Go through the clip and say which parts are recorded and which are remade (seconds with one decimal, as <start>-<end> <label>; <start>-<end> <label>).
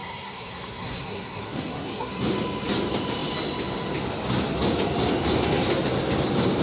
0.0-2.1 remade; 2.1-6.6 recorded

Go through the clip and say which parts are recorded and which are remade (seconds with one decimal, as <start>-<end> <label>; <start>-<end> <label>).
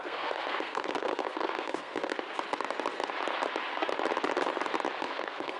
0.0-2.1 remade; 2.1-5.0 recorded; 5.0-5.6 remade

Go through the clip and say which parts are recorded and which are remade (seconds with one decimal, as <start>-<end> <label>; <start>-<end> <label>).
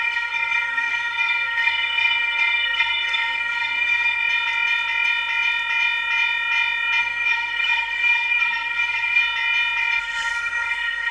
0.0-4.2 remade; 4.2-7.0 recorded; 7.0-9.2 remade; 9.2-10.0 recorded; 10.0-11.1 remade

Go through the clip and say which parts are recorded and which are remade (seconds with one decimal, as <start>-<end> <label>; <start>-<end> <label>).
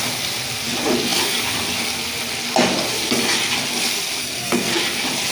0.0-4.2 recorded; 4.2-4.8 remade; 4.8-5.3 recorded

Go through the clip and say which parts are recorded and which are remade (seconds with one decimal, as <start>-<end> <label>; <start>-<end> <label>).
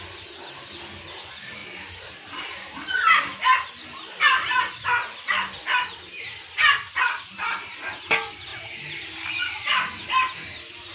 0.0-10.9 recorded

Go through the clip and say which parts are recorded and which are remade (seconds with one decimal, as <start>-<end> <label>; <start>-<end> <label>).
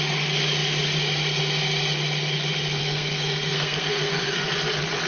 0.0-2.8 recorded; 2.8-4.5 remade; 4.5-5.1 recorded